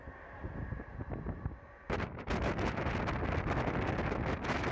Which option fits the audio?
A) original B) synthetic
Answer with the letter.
A